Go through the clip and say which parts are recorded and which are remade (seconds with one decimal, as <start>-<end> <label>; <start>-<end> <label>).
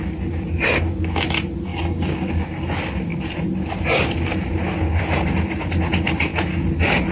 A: 0.0-1.7 recorded; 1.7-2.3 remade; 2.3-7.1 recorded